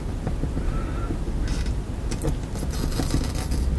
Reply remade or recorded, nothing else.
recorded